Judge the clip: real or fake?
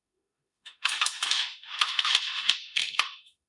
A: fake